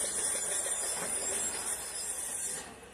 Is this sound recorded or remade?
recorded